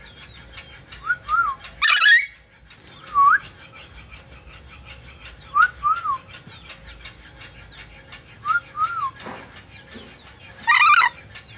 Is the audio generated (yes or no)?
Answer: no